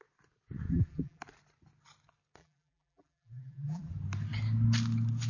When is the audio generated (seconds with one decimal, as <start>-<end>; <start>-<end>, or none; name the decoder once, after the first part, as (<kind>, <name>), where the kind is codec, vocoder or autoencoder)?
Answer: 0.7-1.2 (vocoder, BigVGAN v2); 2.4-3.9